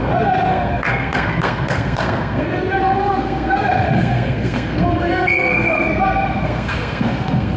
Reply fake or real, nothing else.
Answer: fake